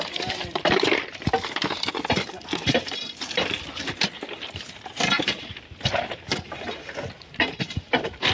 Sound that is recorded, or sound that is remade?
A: remade